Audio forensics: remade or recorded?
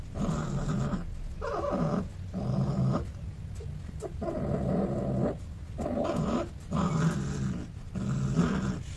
recorded